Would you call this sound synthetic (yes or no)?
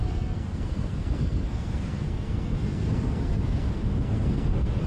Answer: yes